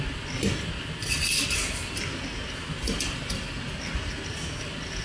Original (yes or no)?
yes